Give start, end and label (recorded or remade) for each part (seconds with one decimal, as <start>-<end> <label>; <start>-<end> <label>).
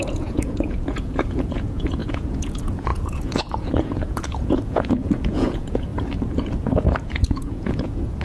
0.0-5.9 remade; 5.9-6.6 recorded; 6.6-8.2 remade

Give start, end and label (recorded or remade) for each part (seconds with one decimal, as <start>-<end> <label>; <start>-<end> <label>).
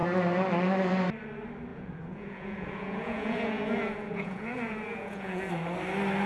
0.0-1.7 recorded; 1.7-5.5 remade; 5.5-6.3 recorded